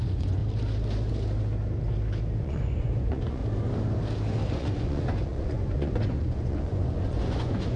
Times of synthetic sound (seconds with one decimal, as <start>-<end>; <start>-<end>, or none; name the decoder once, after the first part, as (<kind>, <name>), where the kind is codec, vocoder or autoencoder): 0.0-0.4 (vocoder, Vocos); 2.4-3.4; 4.5-7.8